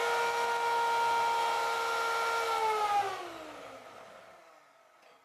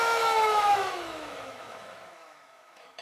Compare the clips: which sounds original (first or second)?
first